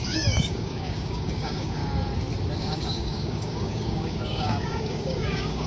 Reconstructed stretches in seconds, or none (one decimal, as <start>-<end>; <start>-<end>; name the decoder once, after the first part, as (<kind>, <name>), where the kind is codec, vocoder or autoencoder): 0.0-1.8 (codec, DAC); 2.6-5.7